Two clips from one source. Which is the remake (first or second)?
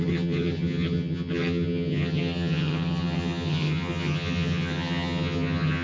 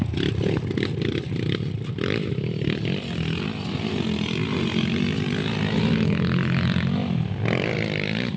first